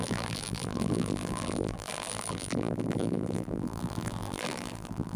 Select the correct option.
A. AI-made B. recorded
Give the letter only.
A